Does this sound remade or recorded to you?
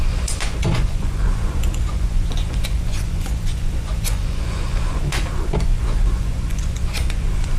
remade